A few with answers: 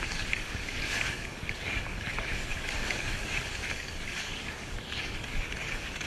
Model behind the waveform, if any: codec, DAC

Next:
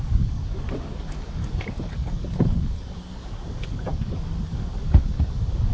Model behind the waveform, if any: codec, DAC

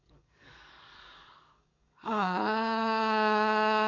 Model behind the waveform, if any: codec, DAC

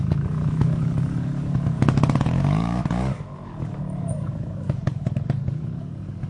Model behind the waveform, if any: codec, DAC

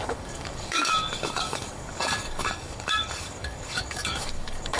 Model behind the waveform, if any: codec, DAC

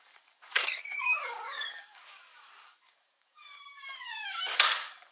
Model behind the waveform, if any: codec, DAC